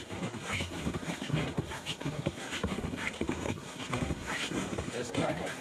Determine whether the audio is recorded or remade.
remade